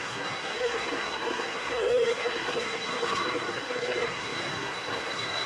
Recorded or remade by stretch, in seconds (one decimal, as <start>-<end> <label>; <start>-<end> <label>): 0.0-5.5 remade